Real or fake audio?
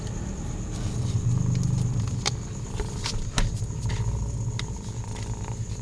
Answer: real